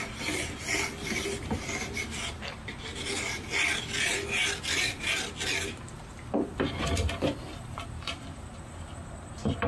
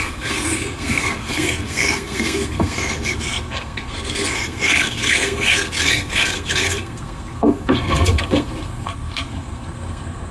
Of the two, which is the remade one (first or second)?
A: second